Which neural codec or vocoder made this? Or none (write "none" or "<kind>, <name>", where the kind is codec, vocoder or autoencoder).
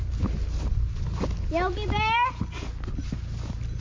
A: none